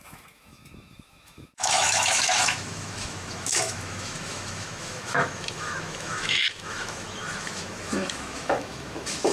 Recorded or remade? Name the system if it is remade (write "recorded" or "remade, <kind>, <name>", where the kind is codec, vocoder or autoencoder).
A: remade, autoencoder, DAC-VAE